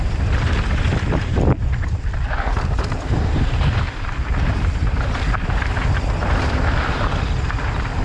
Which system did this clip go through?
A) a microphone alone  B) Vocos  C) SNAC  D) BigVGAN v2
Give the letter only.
D